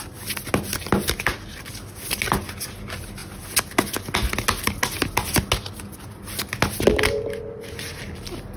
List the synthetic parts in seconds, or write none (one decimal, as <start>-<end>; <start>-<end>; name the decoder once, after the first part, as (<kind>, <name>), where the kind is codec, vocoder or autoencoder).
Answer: none